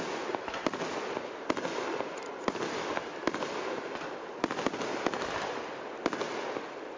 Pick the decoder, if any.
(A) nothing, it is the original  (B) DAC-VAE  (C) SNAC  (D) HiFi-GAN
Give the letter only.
A